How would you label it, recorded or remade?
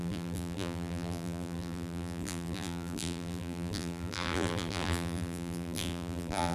remade